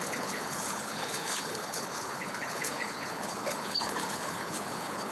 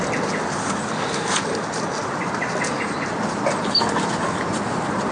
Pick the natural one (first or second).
second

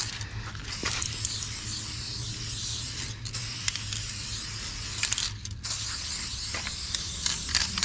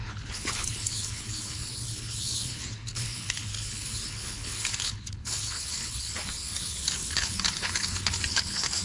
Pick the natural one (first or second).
first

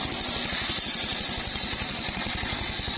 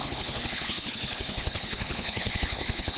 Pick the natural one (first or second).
first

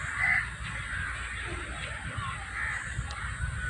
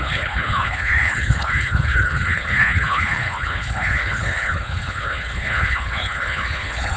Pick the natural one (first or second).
first